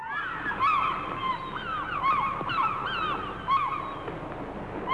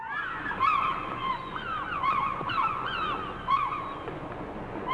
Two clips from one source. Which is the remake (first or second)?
second